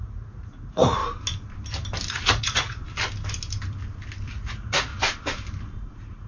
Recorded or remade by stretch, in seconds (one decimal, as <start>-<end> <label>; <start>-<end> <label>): 0.0-1.0 remade; 1.0-2.1 recorded; 2.1-2.8 remade; 2.8-4.3 recorded; 4.3-4.9 remade; 4.9-5.8 recorded; 5.8-6.3 remade